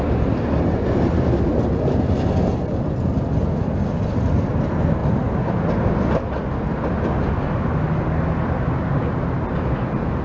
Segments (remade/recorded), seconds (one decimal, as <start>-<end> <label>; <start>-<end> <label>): 0.0-10.2 recorded